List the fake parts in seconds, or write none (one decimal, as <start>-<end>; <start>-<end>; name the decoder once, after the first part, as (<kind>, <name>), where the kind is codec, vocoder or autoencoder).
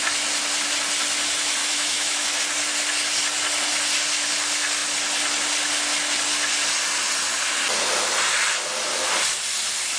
1.6-2.4 (autoencoder, DAC-VAE)